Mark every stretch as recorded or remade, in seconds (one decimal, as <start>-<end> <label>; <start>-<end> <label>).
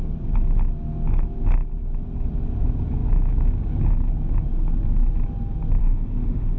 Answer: 0.0-5.8 recorded; 5.8-6.6 remade